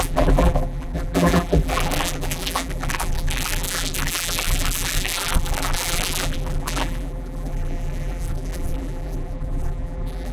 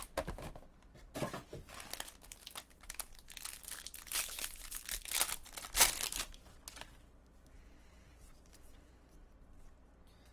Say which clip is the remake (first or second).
first